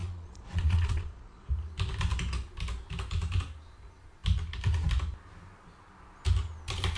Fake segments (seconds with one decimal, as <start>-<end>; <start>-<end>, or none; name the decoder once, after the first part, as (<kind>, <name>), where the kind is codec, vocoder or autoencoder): 0.0-1.5 (vocoder, Vocos)